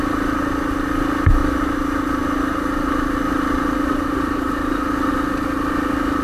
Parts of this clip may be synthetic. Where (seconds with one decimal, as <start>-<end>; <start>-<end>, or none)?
1.4-5.1